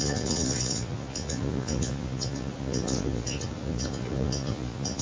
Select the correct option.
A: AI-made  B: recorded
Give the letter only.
A